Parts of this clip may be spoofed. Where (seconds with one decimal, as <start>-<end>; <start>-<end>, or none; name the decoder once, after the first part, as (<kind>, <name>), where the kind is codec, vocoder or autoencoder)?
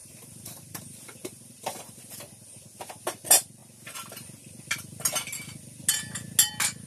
0.0-2.0 (vocoder, BigVGAN v2)